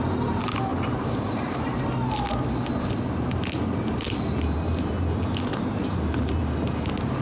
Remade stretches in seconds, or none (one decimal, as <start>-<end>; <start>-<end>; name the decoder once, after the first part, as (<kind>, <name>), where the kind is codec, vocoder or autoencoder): 0.7-1.8 (vocoder, BigVGAN v2); 5.5-6.4